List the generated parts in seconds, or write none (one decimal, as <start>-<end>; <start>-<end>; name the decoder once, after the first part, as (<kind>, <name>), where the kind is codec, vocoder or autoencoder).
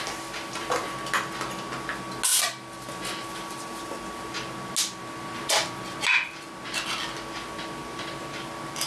none